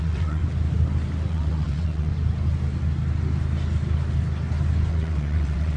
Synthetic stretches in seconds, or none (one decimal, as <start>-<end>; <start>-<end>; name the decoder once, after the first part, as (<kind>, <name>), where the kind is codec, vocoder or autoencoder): 0.0-0.4 (vocoder, WaveNeXt); 1.3-2.1; 4.9-5.8